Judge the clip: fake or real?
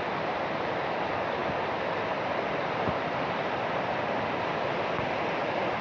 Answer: real